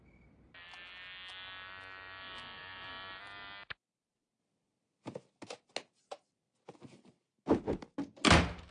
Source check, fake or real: real